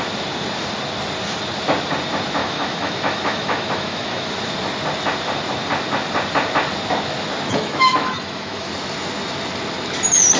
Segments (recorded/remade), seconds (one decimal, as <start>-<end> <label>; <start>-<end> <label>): 0.0-2.4 recorded; 2.4-4.3 remade; 4.3-7.5 recorded; 7.5-8.7 remade; 8.7-10.4 recorded